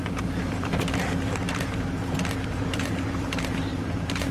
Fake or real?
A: fake